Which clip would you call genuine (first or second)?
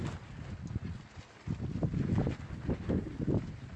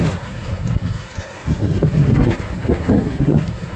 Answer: first